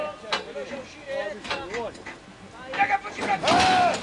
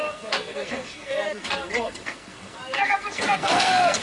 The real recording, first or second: first